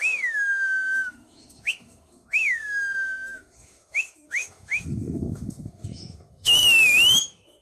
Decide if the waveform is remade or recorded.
remade